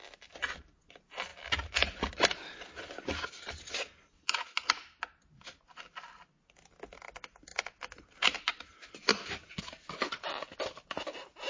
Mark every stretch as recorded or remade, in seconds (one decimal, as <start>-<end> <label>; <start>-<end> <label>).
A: 0.0-11.5 recorded